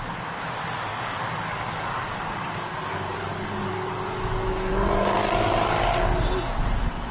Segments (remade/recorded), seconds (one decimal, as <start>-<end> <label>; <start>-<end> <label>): 0.0-0.9 recorded; 0.9-5.2 remade; 5.2-7.1 recorded